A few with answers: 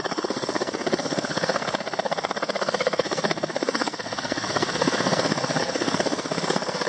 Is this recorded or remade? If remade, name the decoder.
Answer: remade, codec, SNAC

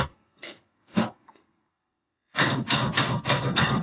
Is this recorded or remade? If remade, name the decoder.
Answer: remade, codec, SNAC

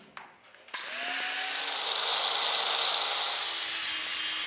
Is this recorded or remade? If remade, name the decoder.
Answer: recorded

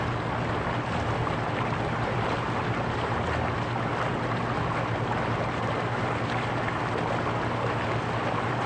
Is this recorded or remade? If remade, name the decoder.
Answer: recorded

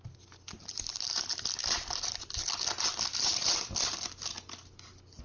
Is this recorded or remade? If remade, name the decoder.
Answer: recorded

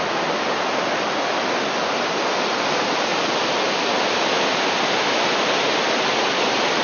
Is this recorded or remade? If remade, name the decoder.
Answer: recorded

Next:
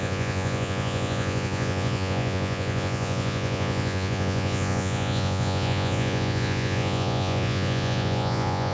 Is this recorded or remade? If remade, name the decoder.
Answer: remade, vocoder, Vocos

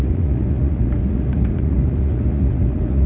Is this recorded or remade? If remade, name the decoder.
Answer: remade, vocoder, Vocos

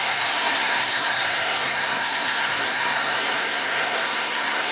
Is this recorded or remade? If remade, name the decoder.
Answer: remade, codec, SNAC